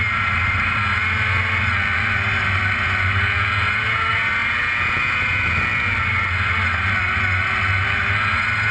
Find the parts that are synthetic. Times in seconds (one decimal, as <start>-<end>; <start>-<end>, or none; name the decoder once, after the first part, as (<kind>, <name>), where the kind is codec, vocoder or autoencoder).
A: none